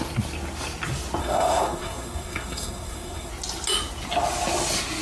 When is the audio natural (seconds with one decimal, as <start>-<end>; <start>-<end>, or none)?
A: 0.0-1.2; 3.3-5.0